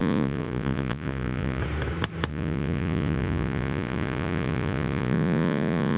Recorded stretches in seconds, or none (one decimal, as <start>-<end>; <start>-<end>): 1.6-2.3